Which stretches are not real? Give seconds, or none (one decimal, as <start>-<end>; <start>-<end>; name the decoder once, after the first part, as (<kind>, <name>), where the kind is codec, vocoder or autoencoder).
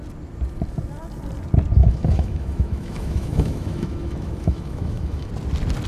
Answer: 1.8-5.3 (autoencoder, DAC-VAE)